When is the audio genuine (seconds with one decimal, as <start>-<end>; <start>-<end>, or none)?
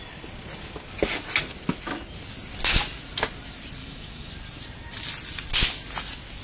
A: 0.0-3.8; 4.3-6.4